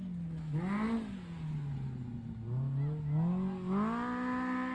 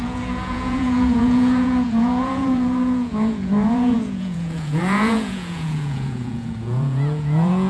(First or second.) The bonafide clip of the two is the first